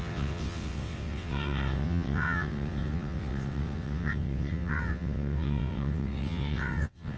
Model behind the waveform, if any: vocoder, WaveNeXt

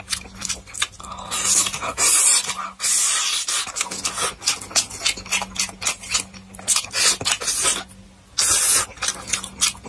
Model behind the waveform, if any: none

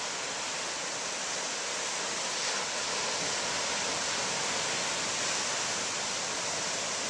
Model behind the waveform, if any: none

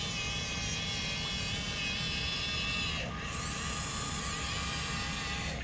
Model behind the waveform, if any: none